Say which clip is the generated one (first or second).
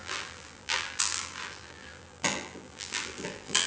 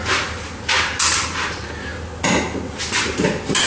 first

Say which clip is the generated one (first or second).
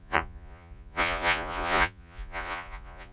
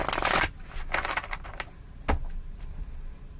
first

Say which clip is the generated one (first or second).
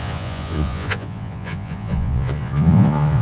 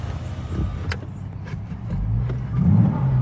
first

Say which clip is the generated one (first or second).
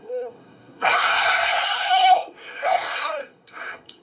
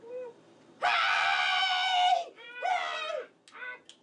first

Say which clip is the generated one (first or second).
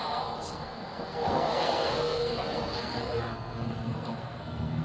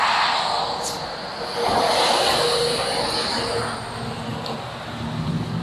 first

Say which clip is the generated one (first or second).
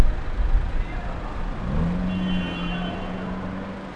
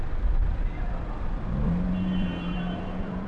second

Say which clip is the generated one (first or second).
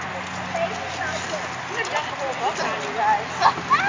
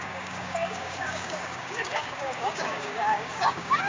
second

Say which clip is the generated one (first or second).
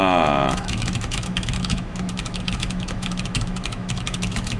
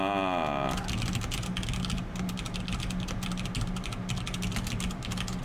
first